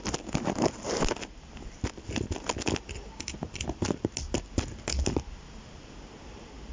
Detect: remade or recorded recorded